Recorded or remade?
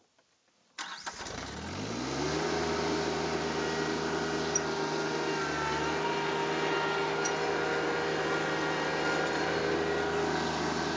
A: recorded